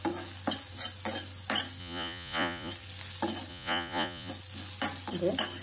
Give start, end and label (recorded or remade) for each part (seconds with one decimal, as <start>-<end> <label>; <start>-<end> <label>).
0.0-1.8 recorded; 1.8-2.7 remade; 2.7-3.5 recorded; 3.5-4.3 remade; 4.3-5.6 recorded